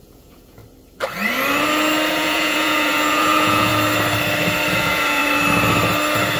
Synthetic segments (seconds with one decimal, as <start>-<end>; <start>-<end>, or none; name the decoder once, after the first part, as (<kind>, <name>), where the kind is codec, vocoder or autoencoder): 0.0-0.6 (vocoder, Vocos); 2.1-3.7; 4.7-5.2